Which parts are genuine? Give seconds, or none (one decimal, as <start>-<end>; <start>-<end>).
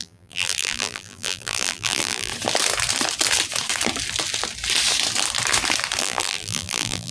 2.3-6.0